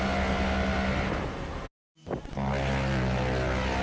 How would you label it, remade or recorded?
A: recorded